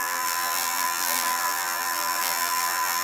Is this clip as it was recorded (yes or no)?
no